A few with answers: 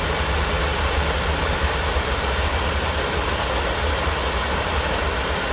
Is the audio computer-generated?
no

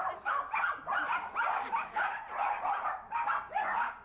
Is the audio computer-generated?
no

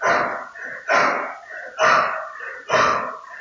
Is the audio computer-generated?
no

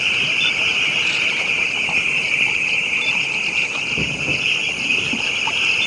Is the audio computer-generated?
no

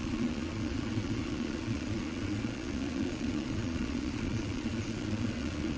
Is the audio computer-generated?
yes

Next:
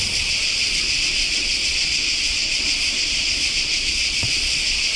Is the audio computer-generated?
yes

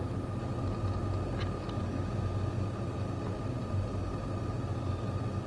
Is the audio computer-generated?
no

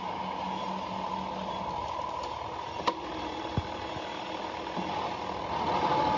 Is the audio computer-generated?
no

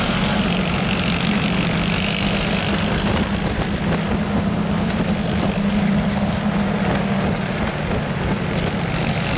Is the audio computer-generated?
no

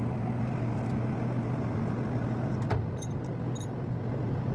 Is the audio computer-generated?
no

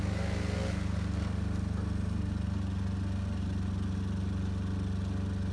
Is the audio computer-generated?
no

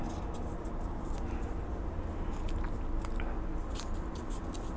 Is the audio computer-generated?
no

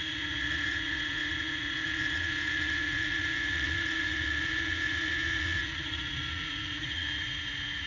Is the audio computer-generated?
yes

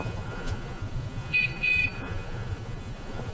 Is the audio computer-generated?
yes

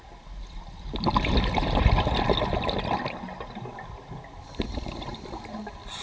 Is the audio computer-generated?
no